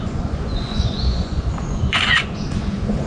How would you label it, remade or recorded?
remade